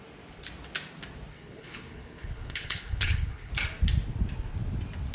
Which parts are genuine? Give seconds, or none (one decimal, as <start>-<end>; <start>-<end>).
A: 0.0-1.3; 3.5-5.1